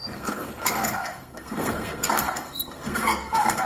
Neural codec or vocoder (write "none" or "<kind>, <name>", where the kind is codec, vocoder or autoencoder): codec, SNAC